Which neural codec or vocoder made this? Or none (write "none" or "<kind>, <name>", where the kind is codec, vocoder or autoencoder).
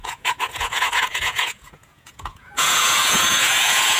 vocoder, Vocos